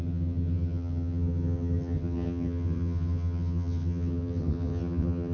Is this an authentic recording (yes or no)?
no